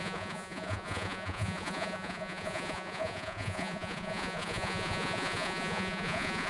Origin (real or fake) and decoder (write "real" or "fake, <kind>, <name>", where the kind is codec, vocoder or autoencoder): fake, vocoder, Vocos